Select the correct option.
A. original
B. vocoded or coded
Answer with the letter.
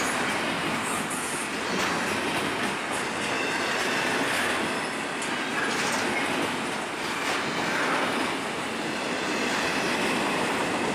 A